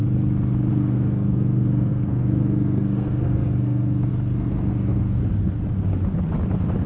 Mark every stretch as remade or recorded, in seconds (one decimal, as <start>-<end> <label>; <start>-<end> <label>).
0.0-0.7 recorded; 0.7-5.2 remade; 5.2-6.9 recorded